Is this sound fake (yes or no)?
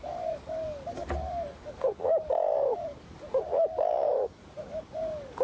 yes